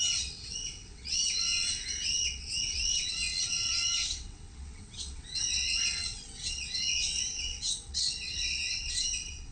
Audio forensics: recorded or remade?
remade